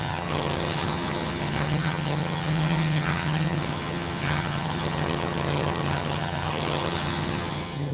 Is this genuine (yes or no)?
no